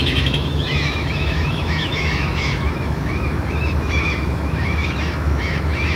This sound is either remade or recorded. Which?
remade